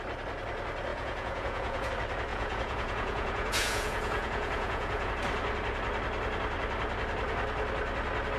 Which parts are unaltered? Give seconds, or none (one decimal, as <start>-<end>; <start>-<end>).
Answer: 0.0-0.9; 1.9-2.3; 5.1-8.4